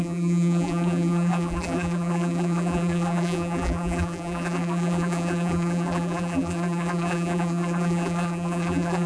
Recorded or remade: remade